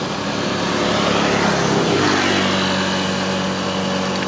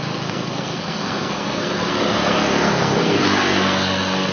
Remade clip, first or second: second